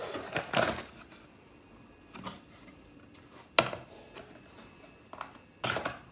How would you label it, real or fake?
real